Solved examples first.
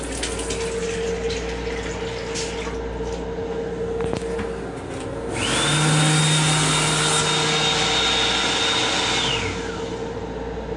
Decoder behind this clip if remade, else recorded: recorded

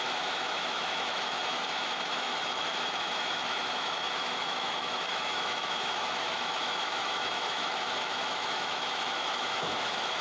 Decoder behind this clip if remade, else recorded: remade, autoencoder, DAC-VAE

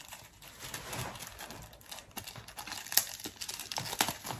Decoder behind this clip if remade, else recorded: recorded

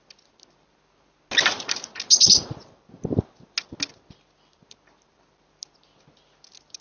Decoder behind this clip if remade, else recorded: recorded